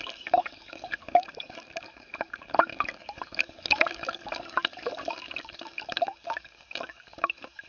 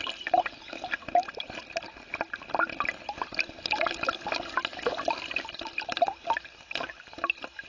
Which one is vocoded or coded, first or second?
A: first